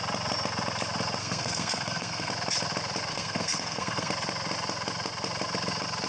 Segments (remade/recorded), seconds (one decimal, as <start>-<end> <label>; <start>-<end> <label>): 0.0-1.2 recorded; 1.2-2.3 remade; 2.3-3.1 recorded; 3.1-4.1 remade; 4.1-6.1 recorded